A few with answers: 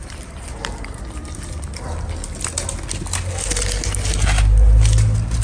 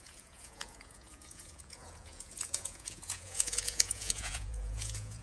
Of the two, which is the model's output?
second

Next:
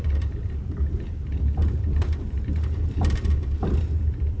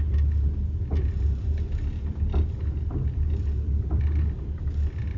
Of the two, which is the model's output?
first